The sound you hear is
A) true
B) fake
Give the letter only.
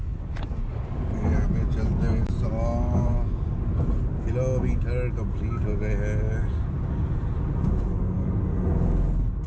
A